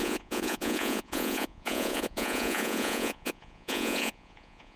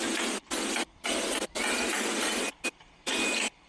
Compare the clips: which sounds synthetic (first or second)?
first